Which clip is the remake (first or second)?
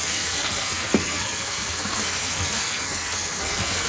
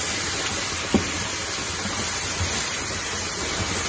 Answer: first